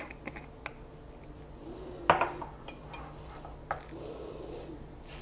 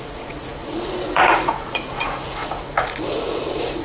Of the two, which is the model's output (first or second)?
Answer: second